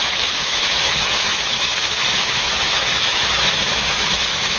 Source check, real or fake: fake